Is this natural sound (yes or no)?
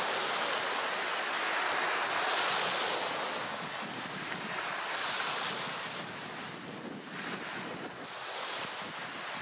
yes